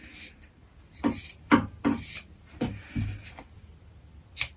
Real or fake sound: real